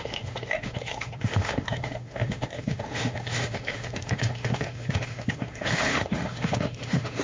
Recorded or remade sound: remade